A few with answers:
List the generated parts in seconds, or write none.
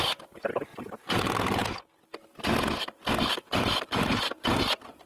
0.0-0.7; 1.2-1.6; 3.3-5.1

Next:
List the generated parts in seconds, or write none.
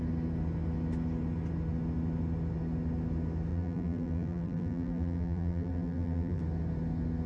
3.5-6.4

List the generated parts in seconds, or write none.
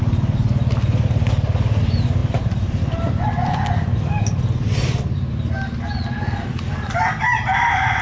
none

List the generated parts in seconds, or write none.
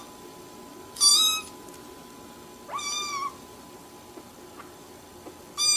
none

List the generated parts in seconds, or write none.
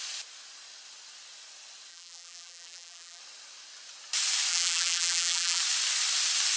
1.9-3.2; 4.5-5.6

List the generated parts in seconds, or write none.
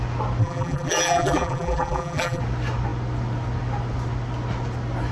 0.4-2.4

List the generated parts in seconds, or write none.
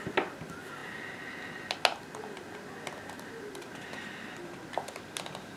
none